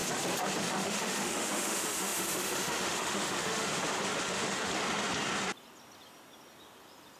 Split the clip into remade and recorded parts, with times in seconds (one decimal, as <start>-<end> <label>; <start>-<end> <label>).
0.0-0.6 recorded; 0.6-3.7 remade; 3.7-4.3 recorded; 4.3-4.7 remade; 4.7-7.2 recorded